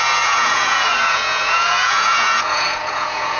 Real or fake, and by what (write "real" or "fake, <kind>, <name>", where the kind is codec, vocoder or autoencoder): fake, vocoder, Vocos